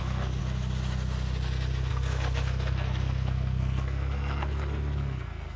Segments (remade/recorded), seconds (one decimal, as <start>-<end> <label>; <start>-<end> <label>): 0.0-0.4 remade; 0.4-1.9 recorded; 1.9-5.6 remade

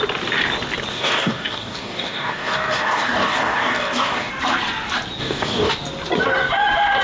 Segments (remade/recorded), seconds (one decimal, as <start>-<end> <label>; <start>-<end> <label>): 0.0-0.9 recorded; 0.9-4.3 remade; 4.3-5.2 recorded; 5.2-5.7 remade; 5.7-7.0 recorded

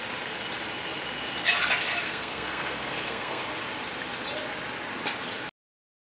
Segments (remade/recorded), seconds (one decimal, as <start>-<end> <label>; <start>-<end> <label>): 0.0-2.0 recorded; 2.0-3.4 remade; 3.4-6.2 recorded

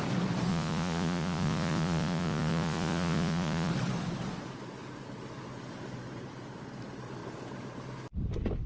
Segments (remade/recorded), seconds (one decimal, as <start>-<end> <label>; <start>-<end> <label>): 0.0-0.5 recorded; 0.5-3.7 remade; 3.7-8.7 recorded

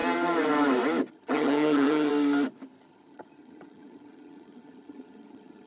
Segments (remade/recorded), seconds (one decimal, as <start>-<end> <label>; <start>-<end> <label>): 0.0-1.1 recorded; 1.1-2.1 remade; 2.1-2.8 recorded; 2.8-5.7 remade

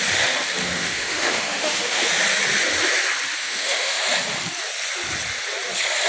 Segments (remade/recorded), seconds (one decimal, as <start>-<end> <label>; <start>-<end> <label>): 0.0-0.6 recorded; 0.6-2.1 remade; 2.1-3.4 recorded; 3.4-4.0 remade; 4.0-6.1 recorded